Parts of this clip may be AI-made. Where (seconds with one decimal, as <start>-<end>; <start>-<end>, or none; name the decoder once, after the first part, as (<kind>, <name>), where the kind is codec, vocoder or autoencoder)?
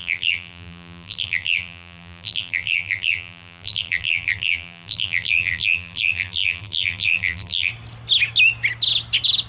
0.0-7.7 (vocoder, BigVGAN v2)